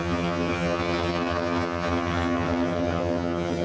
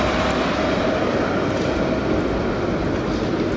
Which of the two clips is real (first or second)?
second